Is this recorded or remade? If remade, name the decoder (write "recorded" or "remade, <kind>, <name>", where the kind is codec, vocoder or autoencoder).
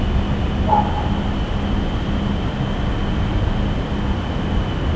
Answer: recorded